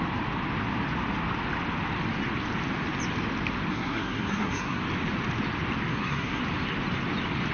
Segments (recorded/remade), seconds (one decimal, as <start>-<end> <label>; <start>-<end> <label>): 0.0-3.7 recorded; 3.7-4.8 remade; 4.8-5.9 recorded; 5.9-6.4 remade; 6.4-7.5 recorded